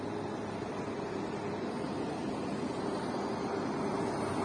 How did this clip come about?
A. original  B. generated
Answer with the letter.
A